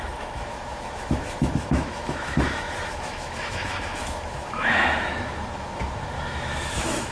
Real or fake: fake